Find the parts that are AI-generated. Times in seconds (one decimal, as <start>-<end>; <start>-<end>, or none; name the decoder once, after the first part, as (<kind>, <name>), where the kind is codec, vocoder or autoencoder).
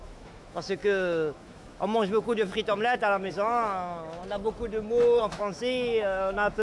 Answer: 0.0-4.2 (autoencoder, DAC-VAE); 5.2-6.6